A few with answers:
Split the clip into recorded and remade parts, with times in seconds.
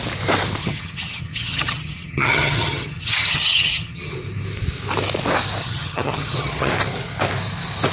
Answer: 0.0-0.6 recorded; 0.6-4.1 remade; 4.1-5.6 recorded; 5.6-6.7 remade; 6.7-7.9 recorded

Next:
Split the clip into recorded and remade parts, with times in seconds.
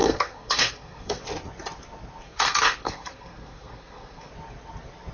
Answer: 0.0-1.2 remade; 1.2-2.2 recorded; 2.2-4.3 remade; 4.3-5.1 recorded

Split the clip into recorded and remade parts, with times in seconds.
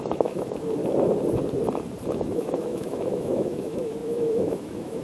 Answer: 0.0-0.8 remade; 0.8-2.1 recorded; 2.1-5.0 remade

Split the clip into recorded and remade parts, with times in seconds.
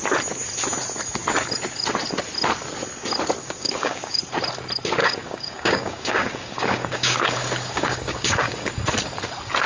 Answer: 0.0-3.4 recorded; 3.4-4.2 remade; 4.2-5.0 recorded; 5.0-8.7 remade; 8.7-9.7 recorded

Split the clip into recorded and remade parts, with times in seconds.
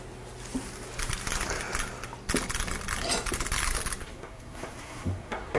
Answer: 0.0-4.0 recorded; 4.0-5.6 remade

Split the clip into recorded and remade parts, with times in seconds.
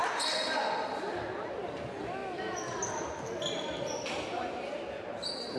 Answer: 0.0-5.6 recorded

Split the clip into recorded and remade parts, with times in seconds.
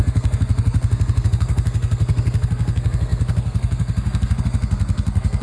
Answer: 0.0-5.4 remade